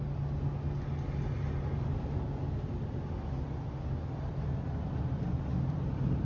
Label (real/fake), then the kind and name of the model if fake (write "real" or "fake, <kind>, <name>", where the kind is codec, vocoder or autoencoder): real